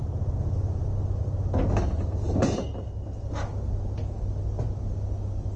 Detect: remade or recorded recorded